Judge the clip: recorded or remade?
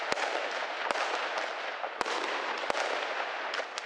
recorded